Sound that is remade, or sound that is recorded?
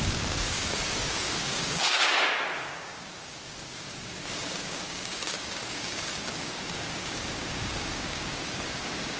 remade